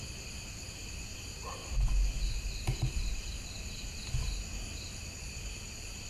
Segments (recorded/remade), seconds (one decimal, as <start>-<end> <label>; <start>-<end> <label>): 0.0-6.1 recorded